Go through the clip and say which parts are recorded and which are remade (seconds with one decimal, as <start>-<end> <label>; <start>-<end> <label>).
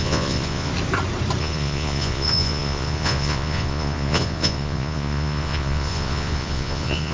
0.0-0.7 remade; 0.7-1.4 recorded; 1.4-7.1 remade